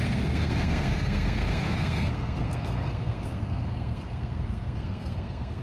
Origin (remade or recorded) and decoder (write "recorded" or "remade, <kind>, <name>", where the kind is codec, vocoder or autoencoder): remade, codec, SNAC